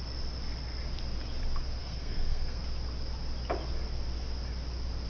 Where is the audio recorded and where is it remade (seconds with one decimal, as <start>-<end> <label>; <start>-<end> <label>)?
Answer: 0.0-1.8 recorded; 1.8-2.6 remade; 2.6-5.1 recorded